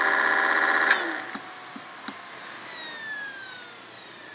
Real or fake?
real